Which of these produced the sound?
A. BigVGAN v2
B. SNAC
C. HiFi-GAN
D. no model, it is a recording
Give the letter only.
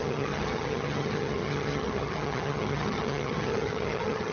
C